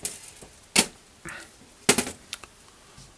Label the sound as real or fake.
real